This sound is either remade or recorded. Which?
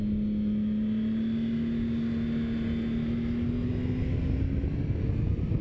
recorded